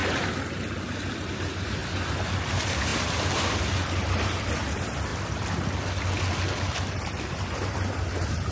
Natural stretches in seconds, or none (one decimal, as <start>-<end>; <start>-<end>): 0.0-1.1; 1.8-2.5; 5.1-6.9